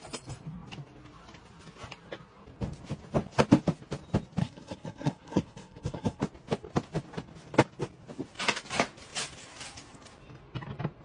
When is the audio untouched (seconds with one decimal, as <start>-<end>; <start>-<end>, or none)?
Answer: 0.0-4.4; 6.2-11.0